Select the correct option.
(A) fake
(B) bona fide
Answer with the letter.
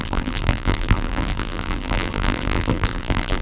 A